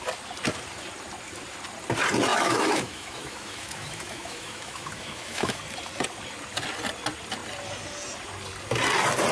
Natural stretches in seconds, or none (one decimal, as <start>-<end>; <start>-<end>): 0.0-2.3; 5.6-9.3

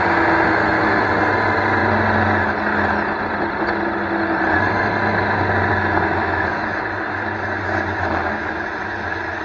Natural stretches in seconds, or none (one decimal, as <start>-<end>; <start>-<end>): 0.0-0.6; 1.2-5.7

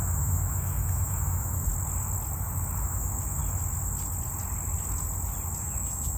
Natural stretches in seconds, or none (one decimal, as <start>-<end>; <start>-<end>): 1.7-2.8; 3.4-5.6

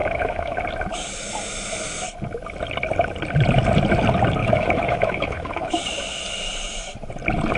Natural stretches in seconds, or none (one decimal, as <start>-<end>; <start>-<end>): 0.6-4.4; 5.7-7.6

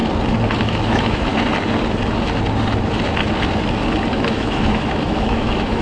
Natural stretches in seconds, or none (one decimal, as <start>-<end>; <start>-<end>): 0.0-0.6; 1.3-4.1